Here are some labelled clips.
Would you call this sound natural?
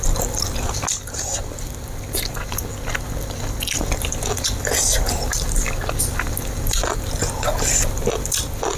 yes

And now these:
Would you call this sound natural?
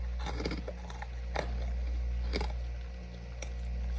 yes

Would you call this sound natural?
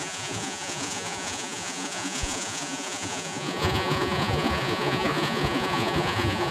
no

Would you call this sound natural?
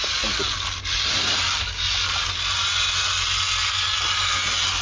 yes